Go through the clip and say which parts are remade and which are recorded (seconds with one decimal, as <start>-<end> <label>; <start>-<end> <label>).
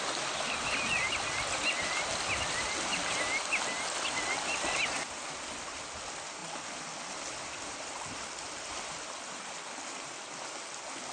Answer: 0.0-11.1 recorded